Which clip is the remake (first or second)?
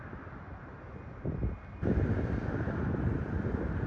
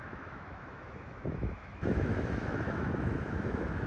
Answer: second